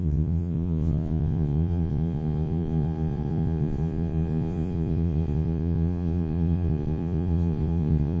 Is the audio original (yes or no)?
no